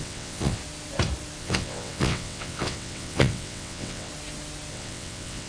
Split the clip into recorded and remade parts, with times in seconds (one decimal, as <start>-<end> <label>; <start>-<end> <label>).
0.0-0.6 remade; 0.6-1.4 recorded; 1.4-4.1 remade; 4.1-4.7 recorded; 4.7-5.5 remade